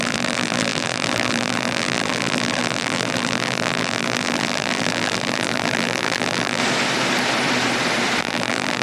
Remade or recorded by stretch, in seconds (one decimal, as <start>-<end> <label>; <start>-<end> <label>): 0.0-6.6 remade; 6.6-8.2 recorded; 8.2-8.8 remade